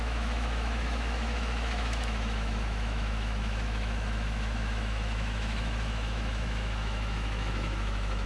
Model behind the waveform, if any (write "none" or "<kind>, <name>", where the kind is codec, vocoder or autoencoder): autoencoder, DAC-VAE